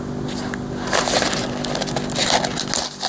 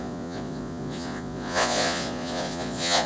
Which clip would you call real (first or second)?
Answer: first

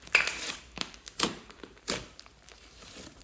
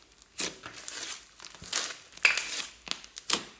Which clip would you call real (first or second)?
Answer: second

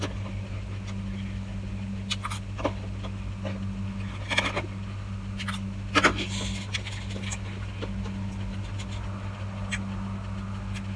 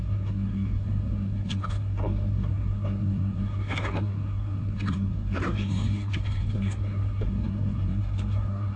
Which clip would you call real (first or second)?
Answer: first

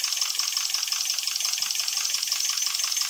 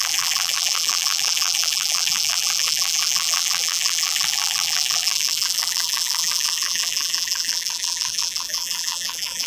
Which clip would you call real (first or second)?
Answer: first